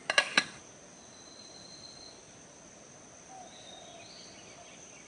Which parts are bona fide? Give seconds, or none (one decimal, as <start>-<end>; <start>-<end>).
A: 0.0-5.1